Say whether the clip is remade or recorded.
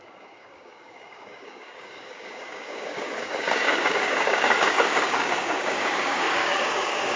remade